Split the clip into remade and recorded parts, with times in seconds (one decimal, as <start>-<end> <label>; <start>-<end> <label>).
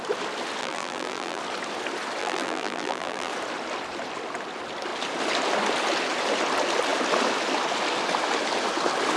0.0-0.6 recorded; 0.6-1.4 remade; 1.4-2.2 recorded; 2.2-3.3 remade; 3.3-9.2 recorded